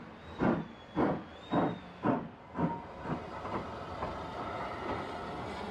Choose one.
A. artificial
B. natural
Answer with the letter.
B